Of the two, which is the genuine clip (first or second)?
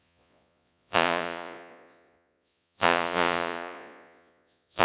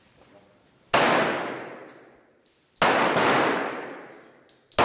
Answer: second